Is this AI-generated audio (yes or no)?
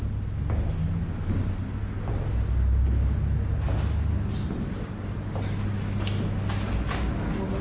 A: no